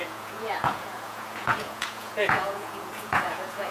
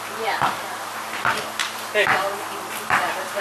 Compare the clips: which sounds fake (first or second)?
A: first